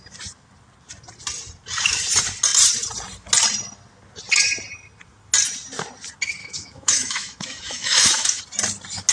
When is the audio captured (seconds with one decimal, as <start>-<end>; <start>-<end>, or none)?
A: 0.0-6.4; 8.4-9.1